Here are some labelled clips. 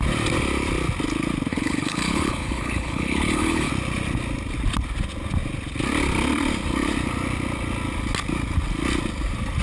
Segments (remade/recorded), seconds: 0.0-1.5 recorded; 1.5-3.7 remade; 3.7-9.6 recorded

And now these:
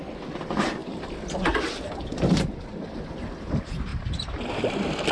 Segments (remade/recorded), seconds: 0.0-3.9 recorded; 3.9-4.5 remade; 4.5-5.1 recorded

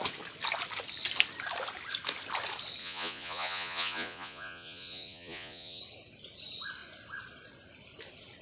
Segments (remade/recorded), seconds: 0.0-2.8 recorded; 2.8-5.8 remade; 5.8-8.4 recorded

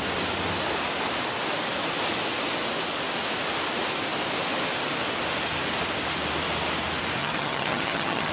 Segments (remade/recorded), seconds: 0.0-7.2 recorded; 7.2-8.3 remade

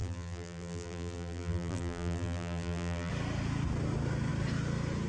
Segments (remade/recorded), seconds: 0.0-3.1 remade; 3.1-5.1 recorded

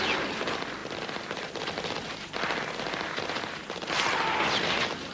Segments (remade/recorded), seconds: 0.0-5.1 recorded

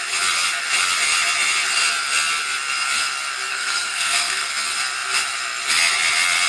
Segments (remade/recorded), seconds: 0.0-3.5 recorded; 3.5-4.5 remade; 4.5-6.5 recorded

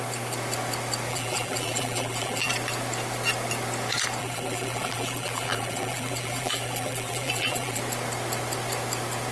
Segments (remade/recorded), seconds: 0.0-1.1 recorded; 1.1-2.5 remade; 2.5-4.2 recorded; 4.2-7.8 remade; 7.8-9.3 recorded